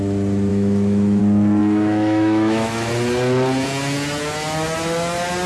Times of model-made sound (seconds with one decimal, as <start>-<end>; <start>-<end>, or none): 0.5-1.2; 1.6-2.9